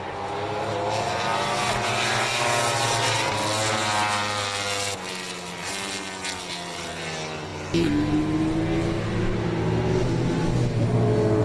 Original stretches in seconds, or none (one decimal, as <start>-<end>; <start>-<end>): 0.0-11.4